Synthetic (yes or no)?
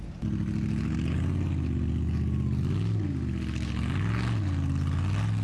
no